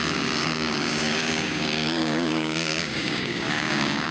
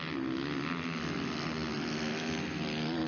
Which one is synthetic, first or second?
first